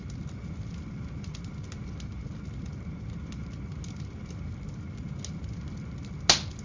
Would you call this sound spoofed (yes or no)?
no